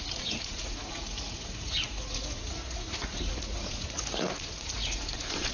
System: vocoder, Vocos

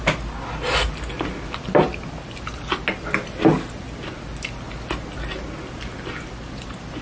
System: none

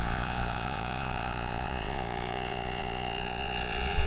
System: vocoder, Vocos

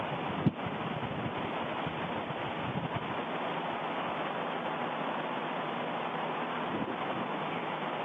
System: none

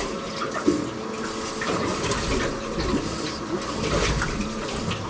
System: none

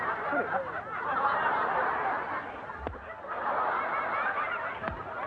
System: none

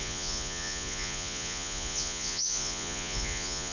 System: vocoder, Vocos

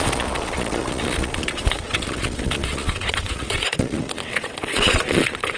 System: vocoder, Vocos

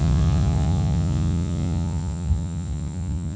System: vocoder, Vocos